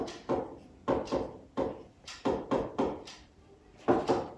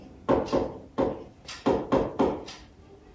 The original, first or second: second